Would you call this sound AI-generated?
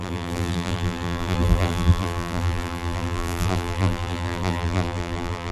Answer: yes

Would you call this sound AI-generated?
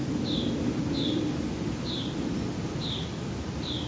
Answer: no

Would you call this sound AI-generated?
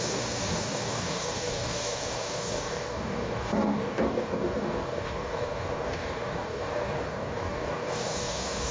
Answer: yes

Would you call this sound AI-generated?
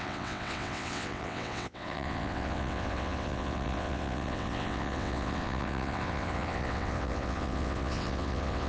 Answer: yes